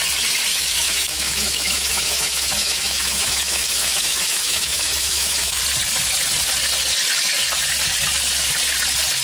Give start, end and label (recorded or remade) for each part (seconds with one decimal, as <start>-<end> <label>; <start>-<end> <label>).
0.0-0.5 recorded; 0.5-5.6 remade; 5.6-9.2 recorded